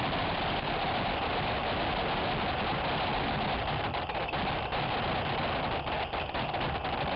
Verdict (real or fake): real